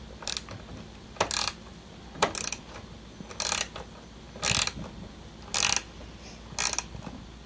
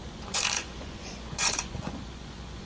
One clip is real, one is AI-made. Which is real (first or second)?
first